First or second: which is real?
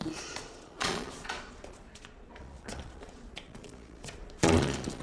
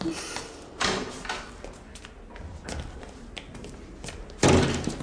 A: second